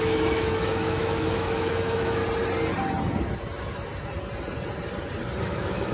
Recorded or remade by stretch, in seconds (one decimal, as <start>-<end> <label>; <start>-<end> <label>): 0.0-2.2 remade; 2.2-5.4 recorded; 5.4-5.9 remade